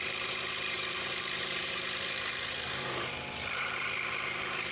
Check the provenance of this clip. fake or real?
fake